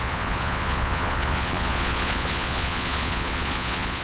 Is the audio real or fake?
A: fake